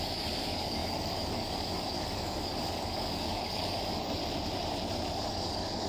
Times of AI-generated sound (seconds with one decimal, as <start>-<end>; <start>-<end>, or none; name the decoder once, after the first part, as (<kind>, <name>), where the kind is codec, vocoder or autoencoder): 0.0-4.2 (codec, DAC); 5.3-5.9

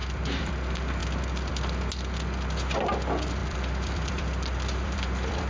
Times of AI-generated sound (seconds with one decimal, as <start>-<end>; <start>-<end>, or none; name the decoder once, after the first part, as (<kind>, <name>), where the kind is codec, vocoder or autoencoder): 0.0-0.5 (vocoder, BigVGAN v2); 3.4-5.5

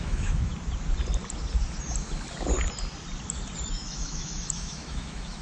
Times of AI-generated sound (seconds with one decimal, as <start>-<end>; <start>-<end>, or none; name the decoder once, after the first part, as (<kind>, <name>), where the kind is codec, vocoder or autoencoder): 0.0-0.5 (autoencoder, DAC-VAE); 3.7-5.4

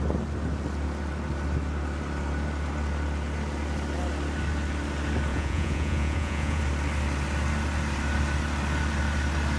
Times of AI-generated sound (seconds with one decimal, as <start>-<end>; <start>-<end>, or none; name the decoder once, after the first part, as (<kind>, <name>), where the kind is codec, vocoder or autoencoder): 5.3-6.6 (vocoder, Vocos)

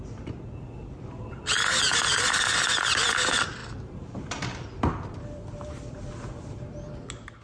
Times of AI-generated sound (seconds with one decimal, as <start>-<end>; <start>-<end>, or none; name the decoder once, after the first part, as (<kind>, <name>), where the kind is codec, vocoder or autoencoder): 3.6-6.5 (vocoder, BigVGAN v2)